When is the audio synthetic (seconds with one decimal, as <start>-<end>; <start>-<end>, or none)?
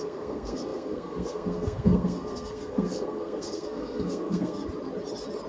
0.0-4.6